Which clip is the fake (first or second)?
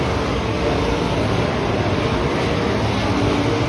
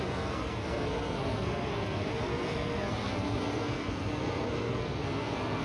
second